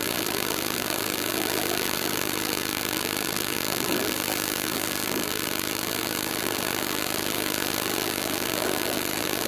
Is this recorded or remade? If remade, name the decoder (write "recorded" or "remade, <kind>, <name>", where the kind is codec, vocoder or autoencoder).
remade, vocoder, BigVGAN v2